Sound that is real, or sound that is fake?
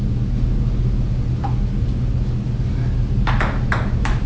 real